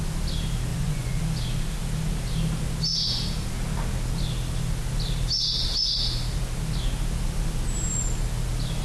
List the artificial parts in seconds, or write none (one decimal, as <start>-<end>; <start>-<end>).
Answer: 0.7-1.2